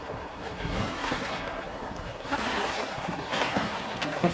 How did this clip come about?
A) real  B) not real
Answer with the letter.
B